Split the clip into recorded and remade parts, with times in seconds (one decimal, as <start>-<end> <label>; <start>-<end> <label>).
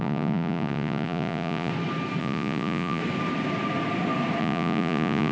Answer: 0.0-1.7 remade; 1.7-2.2 recorded; 2.2-3.0 remade; 3.0-4.4 recorded; 4.4-5.3 remade